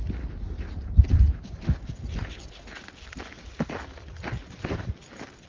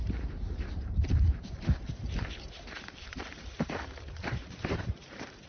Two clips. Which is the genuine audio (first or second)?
first